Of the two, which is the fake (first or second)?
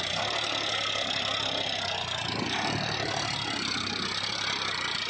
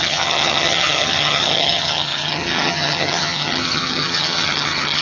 second